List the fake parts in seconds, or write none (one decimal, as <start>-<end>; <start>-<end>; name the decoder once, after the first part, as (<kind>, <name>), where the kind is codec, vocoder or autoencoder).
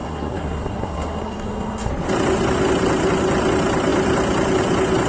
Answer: 0.0-1.9 (codec, SNAC)